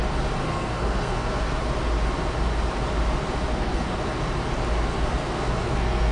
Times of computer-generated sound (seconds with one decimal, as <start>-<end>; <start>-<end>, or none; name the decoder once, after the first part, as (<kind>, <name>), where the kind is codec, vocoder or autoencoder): 0.4-1.6 (codec, SNAC); 3.5-4.0; 4.9-6.1